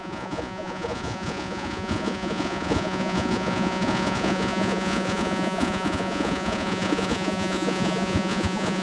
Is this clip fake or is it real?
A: fake